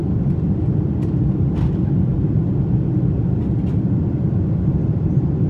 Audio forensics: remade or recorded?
recorded